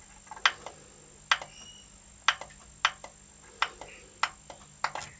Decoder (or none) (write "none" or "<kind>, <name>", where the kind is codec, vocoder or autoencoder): none